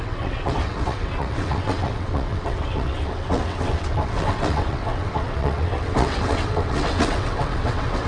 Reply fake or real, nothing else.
fake